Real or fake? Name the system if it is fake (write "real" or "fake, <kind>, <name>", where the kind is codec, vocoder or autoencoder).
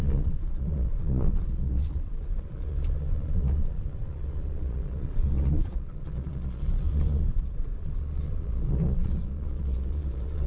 fake, vocoder, Vocos